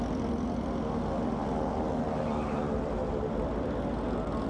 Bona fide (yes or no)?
yes